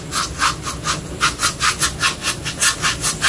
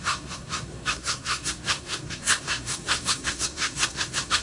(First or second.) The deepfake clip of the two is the second